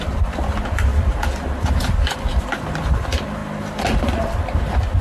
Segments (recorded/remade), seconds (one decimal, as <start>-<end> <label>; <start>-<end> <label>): 0.0-0.9 remade; 0.9-2.4 recorded; 2.4-3.4 remade; 3.4-5.0 recorded